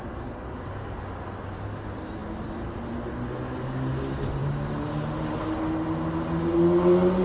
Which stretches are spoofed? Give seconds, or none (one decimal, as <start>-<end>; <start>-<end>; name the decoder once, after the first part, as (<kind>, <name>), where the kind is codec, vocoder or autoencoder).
none